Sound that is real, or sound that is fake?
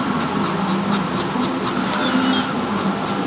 real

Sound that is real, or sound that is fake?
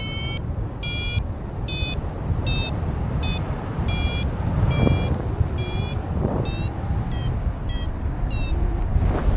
real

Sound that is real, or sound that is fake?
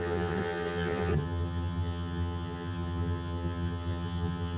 fake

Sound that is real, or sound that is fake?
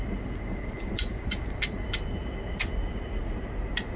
real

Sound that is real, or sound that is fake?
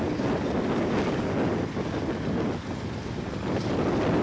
real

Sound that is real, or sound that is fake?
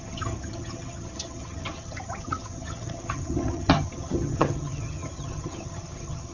fake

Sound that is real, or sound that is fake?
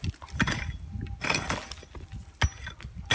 real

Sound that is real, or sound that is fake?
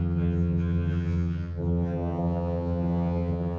fake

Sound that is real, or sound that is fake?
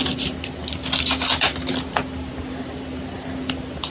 real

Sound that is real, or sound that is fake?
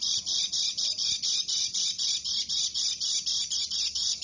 real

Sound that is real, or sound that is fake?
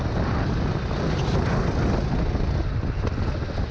real